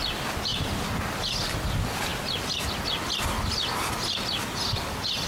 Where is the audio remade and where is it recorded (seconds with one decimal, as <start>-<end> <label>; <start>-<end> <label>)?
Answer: 0.0-0.5 recorded; 0.5-1.1 remade; 1.1-5.3 recorded